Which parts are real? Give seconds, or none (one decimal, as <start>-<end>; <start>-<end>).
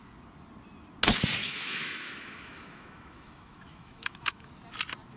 0.0-1.4; 4.5-5.2